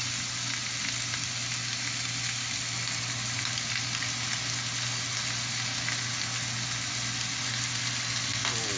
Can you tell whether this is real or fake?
real